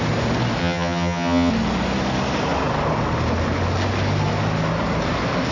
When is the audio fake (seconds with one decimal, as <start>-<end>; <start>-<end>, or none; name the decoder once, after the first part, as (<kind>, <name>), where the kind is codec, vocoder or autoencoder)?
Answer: 0.6-1.5 (vocoder, HiFi-GAN)